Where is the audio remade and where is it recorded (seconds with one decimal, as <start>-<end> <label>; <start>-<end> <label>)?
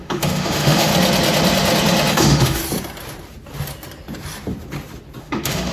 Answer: 0.0-0.9 remade; 0.9-2.1 recorded; 2.1-2.6 remade; 2.6-5.2 recorded; 5.2-5.7 remade